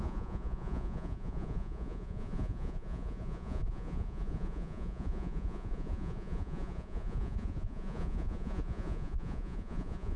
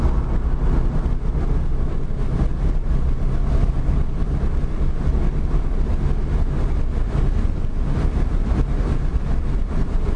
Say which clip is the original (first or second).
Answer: second